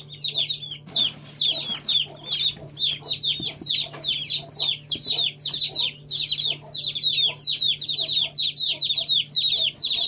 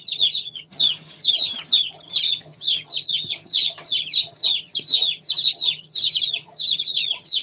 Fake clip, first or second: second